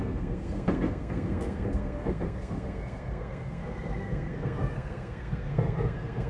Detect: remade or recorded remade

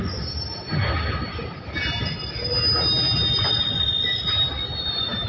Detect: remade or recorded recorded